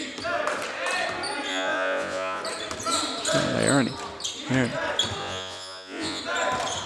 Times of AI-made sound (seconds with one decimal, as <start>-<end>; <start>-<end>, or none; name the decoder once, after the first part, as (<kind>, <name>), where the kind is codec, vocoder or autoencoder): 1.5-2.4 (vocoder, Vocos); 5.2-6.2